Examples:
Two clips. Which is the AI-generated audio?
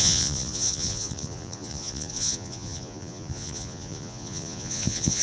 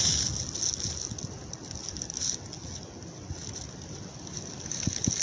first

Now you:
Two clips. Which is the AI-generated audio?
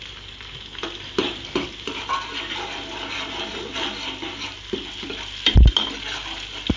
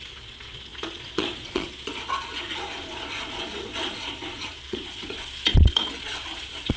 second